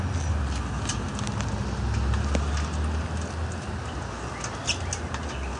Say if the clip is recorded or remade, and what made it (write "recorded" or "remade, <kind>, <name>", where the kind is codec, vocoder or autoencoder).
recorded